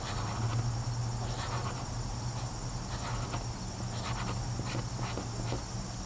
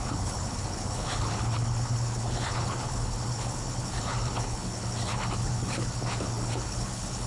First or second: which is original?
first